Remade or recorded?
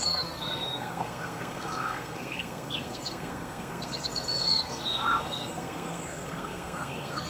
remade